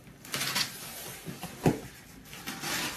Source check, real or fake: real